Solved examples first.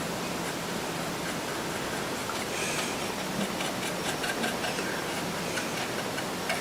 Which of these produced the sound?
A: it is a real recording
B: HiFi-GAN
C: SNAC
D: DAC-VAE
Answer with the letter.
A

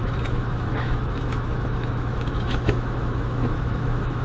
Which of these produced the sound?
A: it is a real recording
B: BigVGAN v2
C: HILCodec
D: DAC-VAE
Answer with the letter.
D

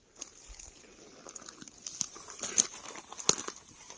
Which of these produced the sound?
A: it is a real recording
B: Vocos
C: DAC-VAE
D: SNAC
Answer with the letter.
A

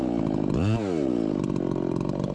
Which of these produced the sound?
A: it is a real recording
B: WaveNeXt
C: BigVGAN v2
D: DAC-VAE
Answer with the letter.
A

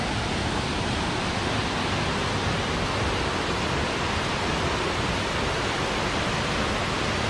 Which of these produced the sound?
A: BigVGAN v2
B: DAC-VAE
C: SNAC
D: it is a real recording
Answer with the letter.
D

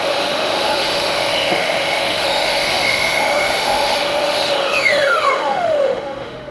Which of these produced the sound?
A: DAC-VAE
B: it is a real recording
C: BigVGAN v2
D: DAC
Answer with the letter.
A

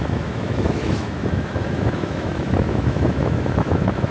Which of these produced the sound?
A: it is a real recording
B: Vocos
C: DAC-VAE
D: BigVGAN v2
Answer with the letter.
C